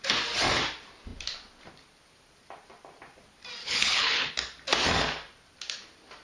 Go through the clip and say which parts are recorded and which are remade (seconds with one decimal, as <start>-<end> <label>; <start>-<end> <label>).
0.0-3.6 recorded; 3.6-4.3 remade; 4.3-6.2 recorded